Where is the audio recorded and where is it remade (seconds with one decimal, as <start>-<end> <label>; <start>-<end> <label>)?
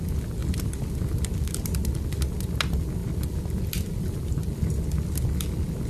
0.0-5.9 recorded